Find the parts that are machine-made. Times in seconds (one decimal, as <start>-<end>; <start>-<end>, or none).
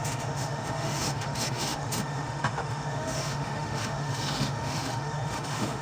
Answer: 0.0-5.8